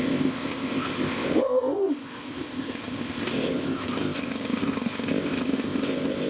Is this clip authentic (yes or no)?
no